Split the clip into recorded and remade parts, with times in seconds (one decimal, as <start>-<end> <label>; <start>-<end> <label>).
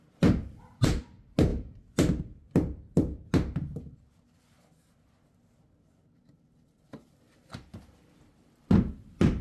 0.0-9.4 recorded